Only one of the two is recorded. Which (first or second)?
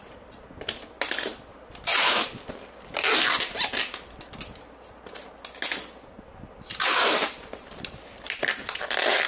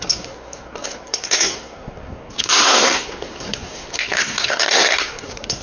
first